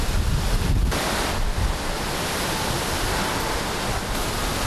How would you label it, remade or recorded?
recorded